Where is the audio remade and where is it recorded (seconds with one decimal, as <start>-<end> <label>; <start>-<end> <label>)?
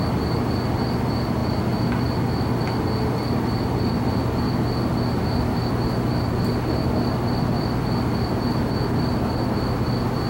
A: 0.0-10.3 recorded